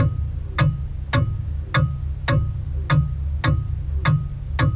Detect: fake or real real